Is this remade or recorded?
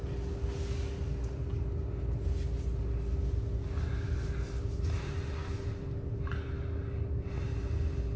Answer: recorded